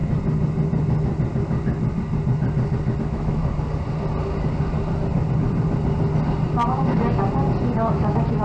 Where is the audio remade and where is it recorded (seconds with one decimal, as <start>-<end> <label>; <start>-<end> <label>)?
0.0-3.0 recorded; 3.0-3.4 remade; 3.4-7.9 recorded; 7.9-8.4 remade